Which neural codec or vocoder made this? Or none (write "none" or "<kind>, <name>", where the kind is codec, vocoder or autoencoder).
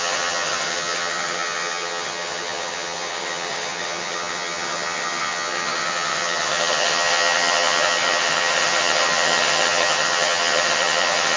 vocoder, HiFi-GAN